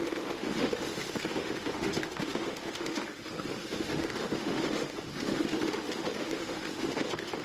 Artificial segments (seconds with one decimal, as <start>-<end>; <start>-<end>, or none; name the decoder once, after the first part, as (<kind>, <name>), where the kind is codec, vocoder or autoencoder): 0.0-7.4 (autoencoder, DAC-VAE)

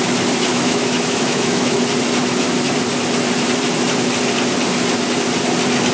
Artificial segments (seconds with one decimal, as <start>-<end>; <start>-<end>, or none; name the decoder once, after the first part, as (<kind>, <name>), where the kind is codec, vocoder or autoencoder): 0.5-1.8 (autoencoder, DAC-VAE)

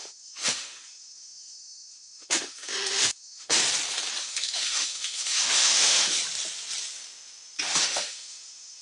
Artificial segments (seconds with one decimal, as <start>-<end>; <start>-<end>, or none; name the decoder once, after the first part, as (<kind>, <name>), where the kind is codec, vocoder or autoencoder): 0.0-3.6 (autoencoder, DAC-VAE); 4.2-6.2; 7.6-8.8